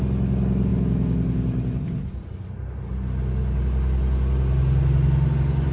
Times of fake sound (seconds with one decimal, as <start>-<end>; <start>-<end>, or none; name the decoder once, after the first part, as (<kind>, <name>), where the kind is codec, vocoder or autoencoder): none